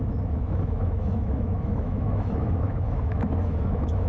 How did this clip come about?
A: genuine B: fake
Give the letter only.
B